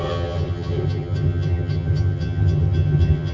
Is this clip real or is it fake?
fake